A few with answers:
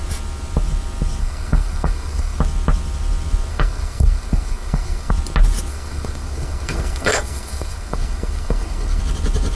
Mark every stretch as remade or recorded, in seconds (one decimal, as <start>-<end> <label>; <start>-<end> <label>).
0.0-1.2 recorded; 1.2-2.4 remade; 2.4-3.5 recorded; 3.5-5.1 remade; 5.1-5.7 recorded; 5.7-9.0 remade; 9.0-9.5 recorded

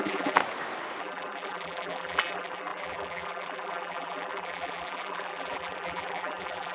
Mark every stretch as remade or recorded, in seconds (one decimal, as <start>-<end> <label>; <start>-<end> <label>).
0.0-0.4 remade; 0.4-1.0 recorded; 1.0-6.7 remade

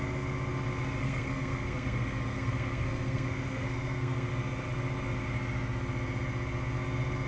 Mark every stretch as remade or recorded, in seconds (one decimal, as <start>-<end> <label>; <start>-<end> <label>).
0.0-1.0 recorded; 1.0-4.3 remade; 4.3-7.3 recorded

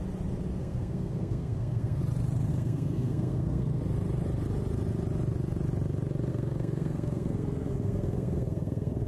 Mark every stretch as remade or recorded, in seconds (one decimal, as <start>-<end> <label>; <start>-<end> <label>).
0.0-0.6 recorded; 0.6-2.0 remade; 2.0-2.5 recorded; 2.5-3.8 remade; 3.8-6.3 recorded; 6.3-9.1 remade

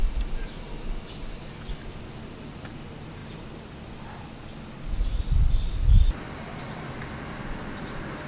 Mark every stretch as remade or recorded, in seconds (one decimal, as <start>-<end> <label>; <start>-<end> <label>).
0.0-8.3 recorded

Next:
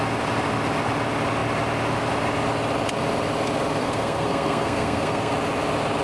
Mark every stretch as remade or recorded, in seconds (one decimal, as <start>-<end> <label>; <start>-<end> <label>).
0.0-3.8 recorded; 3.8-5.3 remade; 5.3-6.0 recorded